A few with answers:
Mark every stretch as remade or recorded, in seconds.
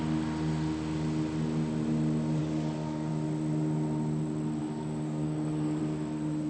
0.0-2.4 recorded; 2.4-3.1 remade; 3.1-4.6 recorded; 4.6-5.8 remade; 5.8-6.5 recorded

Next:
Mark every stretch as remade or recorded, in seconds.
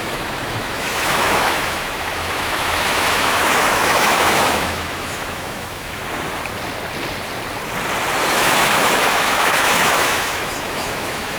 0.0-6.0 remade; 6.0-8.3 recorded; 8.3-11.4 remade